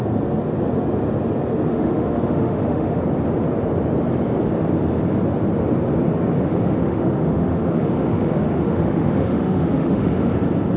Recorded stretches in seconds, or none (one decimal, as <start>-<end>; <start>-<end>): 0.0-1.7; 3.0-6.4; 10.3-10.8